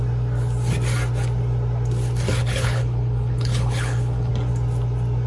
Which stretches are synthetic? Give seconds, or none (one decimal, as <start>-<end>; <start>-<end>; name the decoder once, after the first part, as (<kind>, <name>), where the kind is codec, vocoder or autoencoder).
2.4-4.3 (codec, HILCodec)